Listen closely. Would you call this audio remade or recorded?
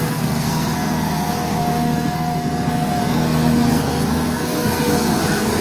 remade